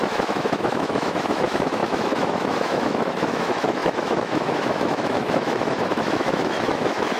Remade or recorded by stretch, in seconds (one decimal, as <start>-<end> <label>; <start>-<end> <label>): 0.0-7.2 remade